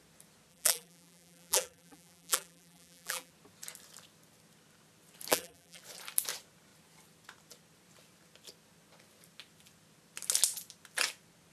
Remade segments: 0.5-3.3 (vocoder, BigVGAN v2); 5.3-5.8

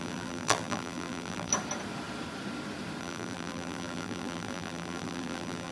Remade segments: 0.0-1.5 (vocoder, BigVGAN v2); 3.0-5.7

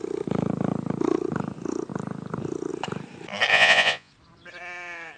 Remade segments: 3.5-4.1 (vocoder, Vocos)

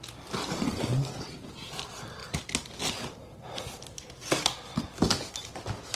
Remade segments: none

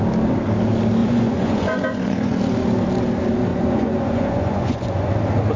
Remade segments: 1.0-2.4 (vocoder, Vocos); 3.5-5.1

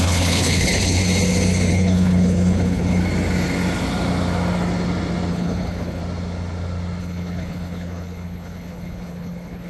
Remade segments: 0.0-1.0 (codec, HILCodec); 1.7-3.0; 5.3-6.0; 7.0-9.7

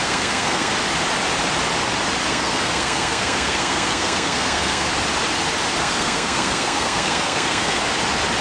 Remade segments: 0.0-0.7 (codec, SNAC); 2.3-4.9; 5.8-7.8